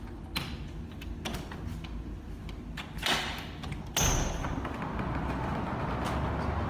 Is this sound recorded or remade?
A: recorded